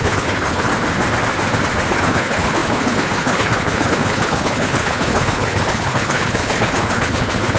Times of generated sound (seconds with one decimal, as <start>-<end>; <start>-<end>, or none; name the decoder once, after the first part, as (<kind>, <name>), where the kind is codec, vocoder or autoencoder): 0.0-0.7 (codec, HILCodec); 1.9-7.6